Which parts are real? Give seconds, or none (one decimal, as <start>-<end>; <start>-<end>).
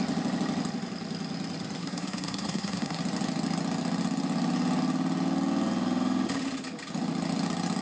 0.0-1.8; 3.0-7.8